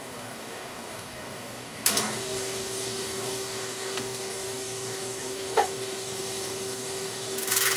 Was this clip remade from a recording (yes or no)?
yes